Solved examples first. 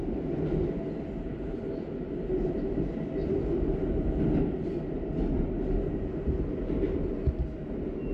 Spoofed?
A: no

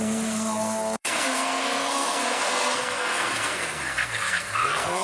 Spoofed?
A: yes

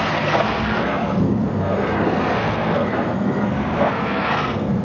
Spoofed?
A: yes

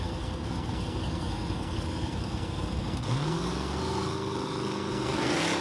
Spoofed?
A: yes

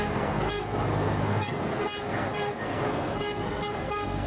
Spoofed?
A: yes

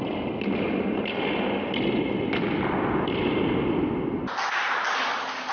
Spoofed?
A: no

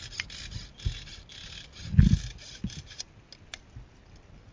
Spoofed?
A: no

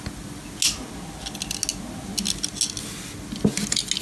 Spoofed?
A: no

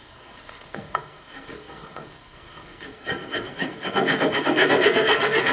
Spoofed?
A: yes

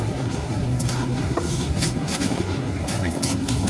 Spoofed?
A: yes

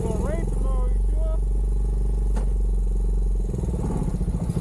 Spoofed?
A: no